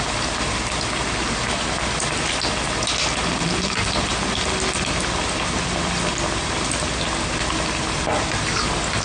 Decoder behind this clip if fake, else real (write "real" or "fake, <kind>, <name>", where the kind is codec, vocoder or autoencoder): real